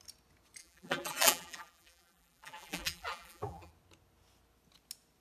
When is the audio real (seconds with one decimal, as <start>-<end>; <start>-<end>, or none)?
0.0-0.6; 3.7-5.2